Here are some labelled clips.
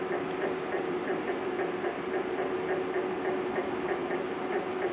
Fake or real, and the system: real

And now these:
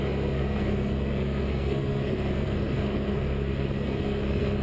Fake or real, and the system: fake, codec, SNAC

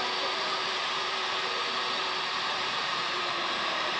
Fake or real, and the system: fake, vocoder, BigVGAN v2